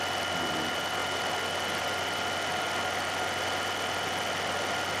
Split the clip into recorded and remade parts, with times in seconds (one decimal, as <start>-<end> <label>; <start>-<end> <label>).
0.0-5.0 recorded